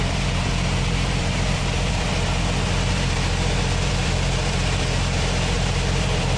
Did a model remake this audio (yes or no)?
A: yes